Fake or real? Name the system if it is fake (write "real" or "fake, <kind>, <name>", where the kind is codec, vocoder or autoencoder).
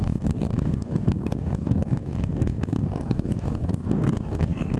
fake, codec, DAC